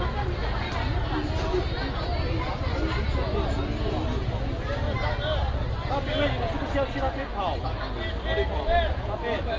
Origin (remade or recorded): recorded